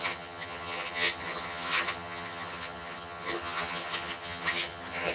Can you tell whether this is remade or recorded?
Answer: remade